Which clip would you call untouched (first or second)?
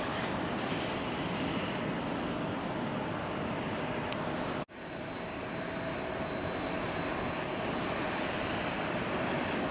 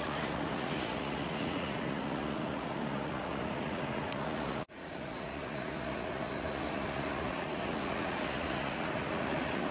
first